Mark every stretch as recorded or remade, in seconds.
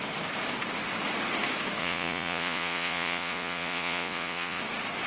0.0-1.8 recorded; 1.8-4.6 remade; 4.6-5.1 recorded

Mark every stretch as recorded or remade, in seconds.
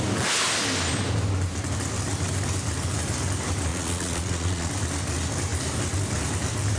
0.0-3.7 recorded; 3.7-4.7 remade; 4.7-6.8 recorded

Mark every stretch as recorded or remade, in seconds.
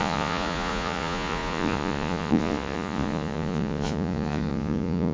0.0-5.1 remade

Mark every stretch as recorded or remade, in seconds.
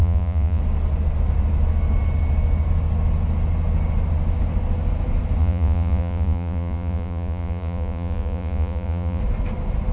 0.0-0.6 remade; 0.6-5.4 recorded; 5.4-9.2 remade; 9.2-9.9 recorded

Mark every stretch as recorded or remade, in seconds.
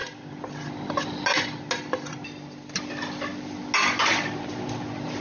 0.0-5.2 recorded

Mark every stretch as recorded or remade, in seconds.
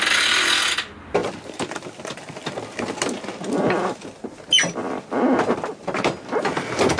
0.0-7.0 recorded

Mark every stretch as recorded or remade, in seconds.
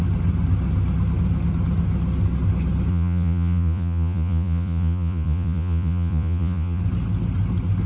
0.0-2.9 recorded; 2.9-6.8 remade; 6.8-7.9 recorded